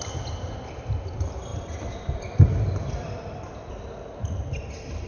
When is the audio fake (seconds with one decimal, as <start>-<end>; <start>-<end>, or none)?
none